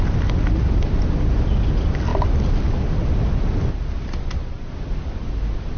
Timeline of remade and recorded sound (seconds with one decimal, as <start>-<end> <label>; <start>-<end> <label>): 0.0-5.8 recorded